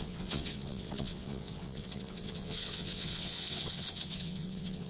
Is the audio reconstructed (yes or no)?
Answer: yes